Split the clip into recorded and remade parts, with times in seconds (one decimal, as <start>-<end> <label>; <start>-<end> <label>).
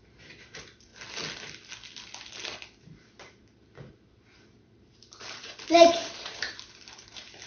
0.0-0.9 remade; 0.9-2.8 recorded; 2.8-7.5 remade